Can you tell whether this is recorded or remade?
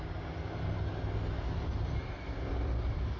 recorded